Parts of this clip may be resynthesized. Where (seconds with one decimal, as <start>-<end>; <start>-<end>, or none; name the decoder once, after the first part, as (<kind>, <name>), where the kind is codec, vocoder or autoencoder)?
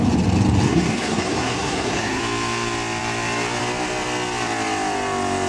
0.7-2.2 (codec, SNAC)